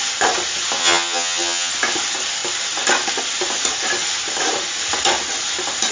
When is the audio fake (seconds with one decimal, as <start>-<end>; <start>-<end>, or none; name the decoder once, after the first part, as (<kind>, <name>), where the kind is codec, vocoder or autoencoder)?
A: 0.8-1.7 (vocoder, HiFi-GAN)